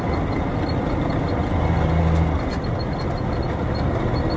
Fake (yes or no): no